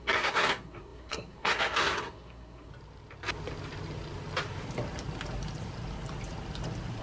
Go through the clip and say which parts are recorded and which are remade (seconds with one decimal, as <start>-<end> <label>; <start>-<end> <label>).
0.0-2.7 remade; 2.7-7.0 recorded